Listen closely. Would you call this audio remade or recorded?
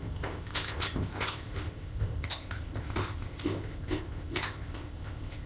remade